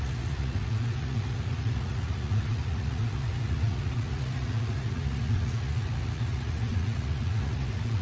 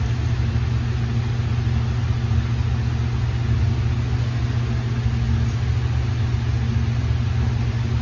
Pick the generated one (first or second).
first